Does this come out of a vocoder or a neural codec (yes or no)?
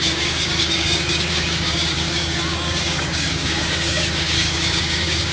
yes